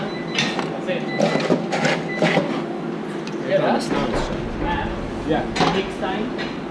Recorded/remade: recorded